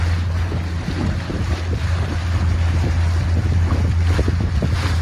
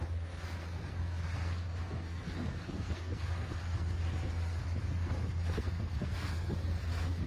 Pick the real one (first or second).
first